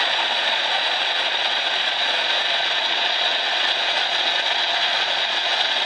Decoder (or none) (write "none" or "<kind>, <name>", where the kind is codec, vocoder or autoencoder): vocoder, Vocos